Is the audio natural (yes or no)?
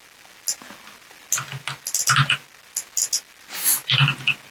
yes